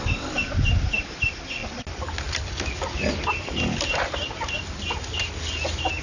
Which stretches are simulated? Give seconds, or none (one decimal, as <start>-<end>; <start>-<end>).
none

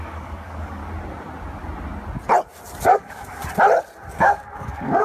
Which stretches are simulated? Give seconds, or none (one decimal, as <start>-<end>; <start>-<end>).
0.0-0.8; 2.8-3.4; 4.1-5.0

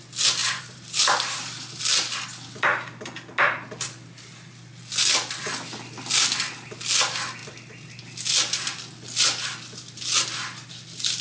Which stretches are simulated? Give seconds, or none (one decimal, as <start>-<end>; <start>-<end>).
0.4-1.8